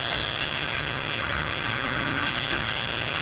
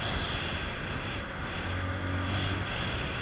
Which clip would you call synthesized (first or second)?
first